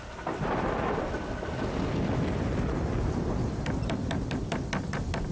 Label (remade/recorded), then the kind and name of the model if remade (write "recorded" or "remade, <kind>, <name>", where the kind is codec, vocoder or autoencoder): recorded